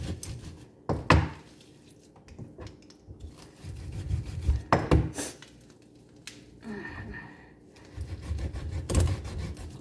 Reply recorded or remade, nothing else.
recorded